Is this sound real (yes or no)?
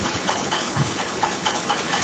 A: no